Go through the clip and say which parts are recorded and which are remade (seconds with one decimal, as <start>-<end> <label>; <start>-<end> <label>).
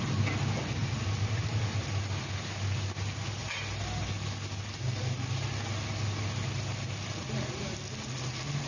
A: 0.0-8.7 recorded